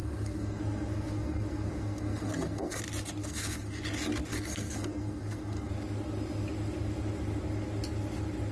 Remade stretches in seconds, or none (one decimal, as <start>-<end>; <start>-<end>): 0.0-2.8; 3.2-3.8; 4.3-5.7